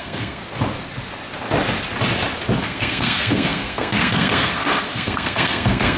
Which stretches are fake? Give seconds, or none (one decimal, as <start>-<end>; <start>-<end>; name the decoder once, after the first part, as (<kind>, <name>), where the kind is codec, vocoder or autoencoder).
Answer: 0.0-0.4 (codec, SNAC); 2.6-6.0

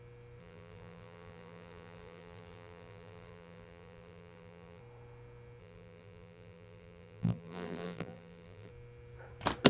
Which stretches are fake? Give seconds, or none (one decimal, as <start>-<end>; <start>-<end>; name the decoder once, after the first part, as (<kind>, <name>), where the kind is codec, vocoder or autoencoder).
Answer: 0.4-4.8 (vocoder, BigVGAN v2); 5.6-8.7

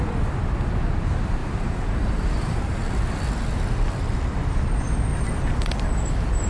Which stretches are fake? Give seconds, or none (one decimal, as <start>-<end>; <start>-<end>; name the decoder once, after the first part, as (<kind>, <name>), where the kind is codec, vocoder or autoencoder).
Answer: 1.4-2.6 (vocoder, BigVGAN v2); 5.1-5.9

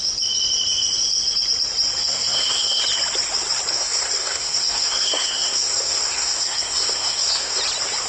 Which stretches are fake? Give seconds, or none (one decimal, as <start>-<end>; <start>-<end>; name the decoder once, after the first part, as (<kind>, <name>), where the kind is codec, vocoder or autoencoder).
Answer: 2.0-2.8 (codec, SNAC); 3.7-7.6

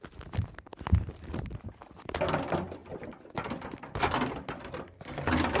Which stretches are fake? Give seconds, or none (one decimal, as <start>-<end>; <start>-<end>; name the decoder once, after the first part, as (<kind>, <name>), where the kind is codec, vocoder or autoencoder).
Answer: none